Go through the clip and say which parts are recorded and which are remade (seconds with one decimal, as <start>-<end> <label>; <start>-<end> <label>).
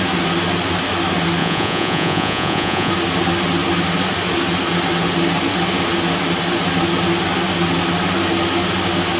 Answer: 0.0-1.4 recorded; 1.4-2.9 remade; 2.9-9.2 recorded